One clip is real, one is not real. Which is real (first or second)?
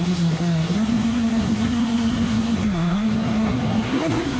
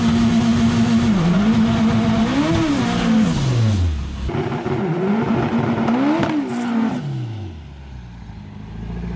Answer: second